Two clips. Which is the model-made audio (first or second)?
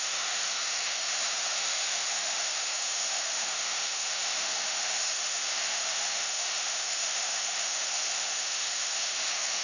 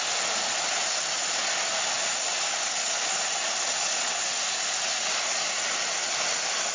first